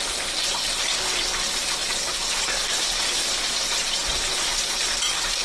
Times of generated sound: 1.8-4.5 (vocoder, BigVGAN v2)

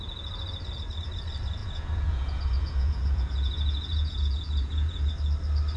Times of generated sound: 1.6-5.1 (vocoder, Vocos)

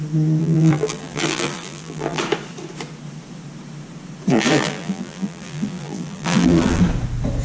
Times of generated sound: 0.4-2.2 (vocoder, BigVGAN v2); 4.3-6.8

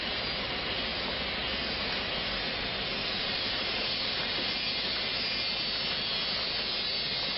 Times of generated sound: 3.0-4.5 (vocoder, BigVGAN v2)

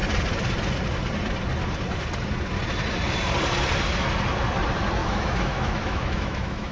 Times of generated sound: 5.0-6.7 (autoencoder, DAC-VAE)